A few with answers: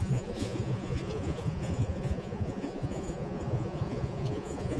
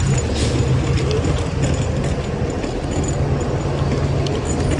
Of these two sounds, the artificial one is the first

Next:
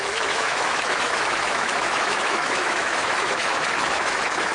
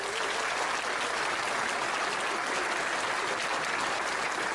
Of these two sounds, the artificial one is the first